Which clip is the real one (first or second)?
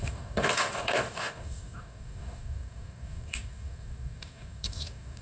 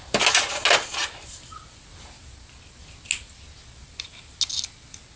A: second